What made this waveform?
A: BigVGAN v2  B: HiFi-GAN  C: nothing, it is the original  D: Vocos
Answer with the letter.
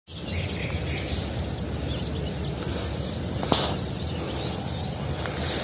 C